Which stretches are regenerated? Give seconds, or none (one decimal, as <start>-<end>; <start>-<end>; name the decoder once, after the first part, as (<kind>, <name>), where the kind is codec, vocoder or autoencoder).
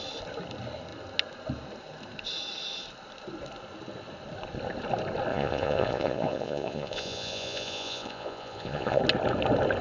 5.3-9.0 (vocoder, Vocos)